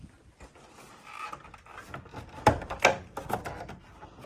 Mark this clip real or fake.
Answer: real